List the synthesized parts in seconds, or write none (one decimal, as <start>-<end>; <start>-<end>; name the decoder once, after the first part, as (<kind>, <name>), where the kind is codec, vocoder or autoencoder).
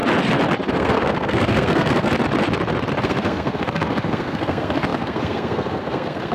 0.7-2.1 (codec, SNAC); 3.0-6.3